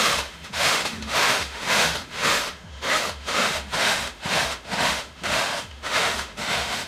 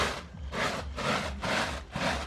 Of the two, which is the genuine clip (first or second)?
second